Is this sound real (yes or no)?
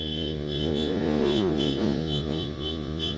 no